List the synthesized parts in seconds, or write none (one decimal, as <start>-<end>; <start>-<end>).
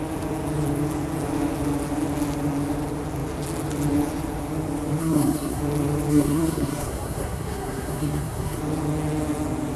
5.0-5.6; 6.1-8.6